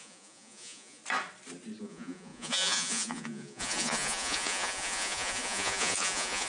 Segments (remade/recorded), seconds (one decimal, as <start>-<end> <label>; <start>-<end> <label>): 0.0-1.0 remade; 1.0-1.8 recorded; 1.8-6.5 remade